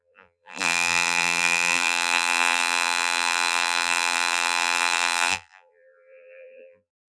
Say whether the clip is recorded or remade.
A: remade